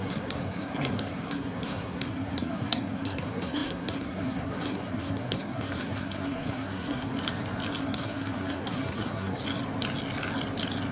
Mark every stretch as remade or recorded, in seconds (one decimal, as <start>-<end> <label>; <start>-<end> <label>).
0.0-7.1 remade; 7.1-7.8 recorded; 7.8-9.4 remade; 9.4-10.9 recorded